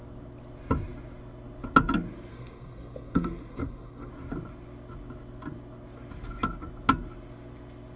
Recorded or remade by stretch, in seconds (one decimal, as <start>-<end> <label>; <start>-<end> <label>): 0.0-2.3 recorded; 2.3-4.1 remade; 4.1-8.0 recorded